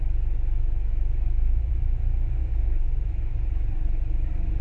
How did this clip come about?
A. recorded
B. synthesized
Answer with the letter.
B